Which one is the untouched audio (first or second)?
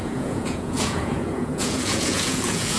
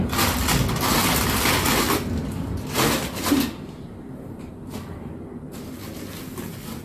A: second